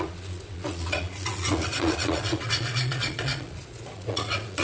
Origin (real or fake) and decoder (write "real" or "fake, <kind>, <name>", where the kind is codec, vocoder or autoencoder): fake, vocoder, Vocos